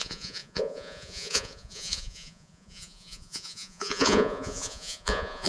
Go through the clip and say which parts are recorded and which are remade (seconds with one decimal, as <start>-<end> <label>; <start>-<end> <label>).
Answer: 0.0-5.5 remade